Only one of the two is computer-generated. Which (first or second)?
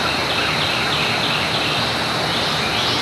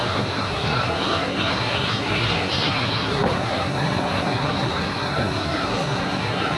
second